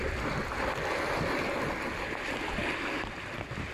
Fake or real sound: real